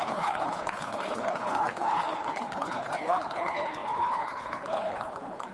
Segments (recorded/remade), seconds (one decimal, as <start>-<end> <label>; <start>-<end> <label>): 0.0-5.5 remade

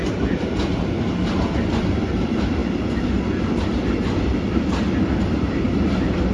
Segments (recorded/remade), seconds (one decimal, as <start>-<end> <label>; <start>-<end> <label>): 0.0-6.3 recorded

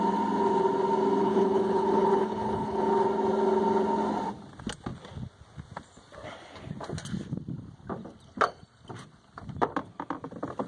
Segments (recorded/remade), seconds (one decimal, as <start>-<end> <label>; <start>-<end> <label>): 0.0-1.2 recorded; 1.2-2.9 remade; 2.9-10.7 recorded

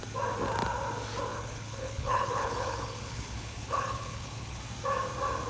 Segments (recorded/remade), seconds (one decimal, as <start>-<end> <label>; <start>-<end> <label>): 0.0-1.3 recorded; 1.3-4.6 remade; 4.6-5.5 recorded

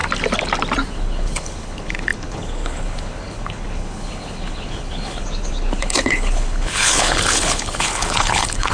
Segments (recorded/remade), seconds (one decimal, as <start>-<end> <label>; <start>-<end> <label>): 0.0-0.9 recorded; 0.9-8.7 remade

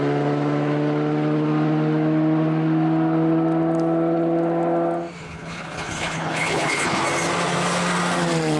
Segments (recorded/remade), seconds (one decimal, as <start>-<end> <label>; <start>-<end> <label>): 0.0-5.2 recorded; 5.2-7.0 remade; 7.0-8.6 recorded